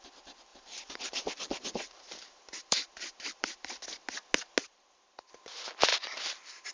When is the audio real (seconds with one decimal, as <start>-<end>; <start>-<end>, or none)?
0.0-0.5; 3.8-4.6; 5.3-5.9